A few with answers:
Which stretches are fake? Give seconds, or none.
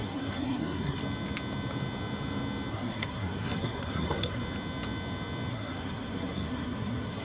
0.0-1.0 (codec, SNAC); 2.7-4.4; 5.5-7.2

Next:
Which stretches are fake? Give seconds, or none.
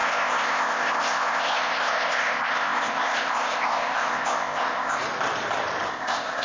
0.0-5.0 (codec, ZipCodec); 5.9-6.4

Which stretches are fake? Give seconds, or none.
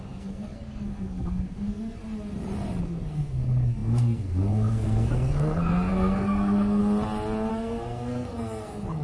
0.0-2.0 (codec, SNAC); 2.8-6.8; 7.5-9.0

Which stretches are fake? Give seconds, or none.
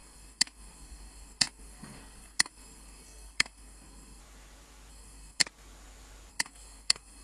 0.0-4.2 (codec, SNAC); 4.9-5.4; 6.3-7.2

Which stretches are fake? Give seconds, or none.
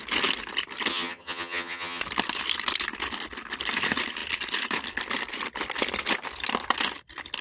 0.9-2.0 (vocoder, HiFi-GAN)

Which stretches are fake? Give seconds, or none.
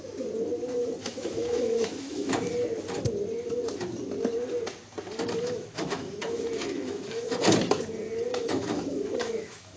1.0-2.3 (autoencoder, DAC-VAE); 5.4-7.3; 8.3-9.8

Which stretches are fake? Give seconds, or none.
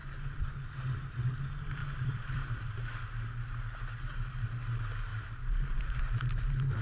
1.8-2.9 (vocoder, BigVGAN v2)